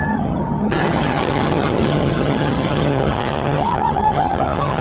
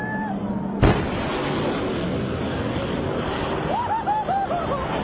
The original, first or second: second